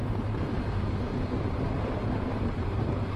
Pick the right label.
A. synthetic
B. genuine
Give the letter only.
A